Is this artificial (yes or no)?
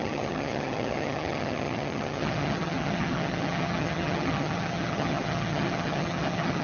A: yes